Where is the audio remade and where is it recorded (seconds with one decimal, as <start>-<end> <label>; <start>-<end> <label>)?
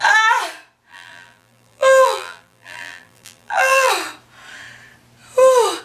0.0-0.9 recorded; 0.9-3.9 remade; 3.9-5.8 recorded